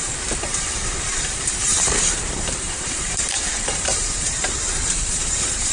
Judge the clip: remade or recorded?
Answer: remade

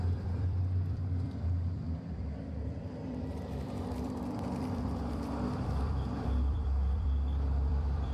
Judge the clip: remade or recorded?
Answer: remade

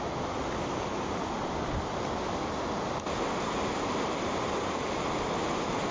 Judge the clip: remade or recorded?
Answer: recorded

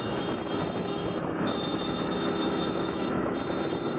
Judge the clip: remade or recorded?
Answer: remade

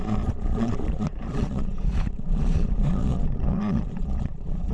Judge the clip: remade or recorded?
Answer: remade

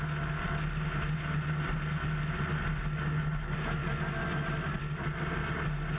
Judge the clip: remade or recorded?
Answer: recorded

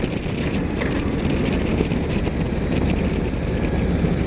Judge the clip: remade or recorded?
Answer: recorded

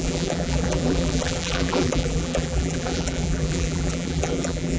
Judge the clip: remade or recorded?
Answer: remade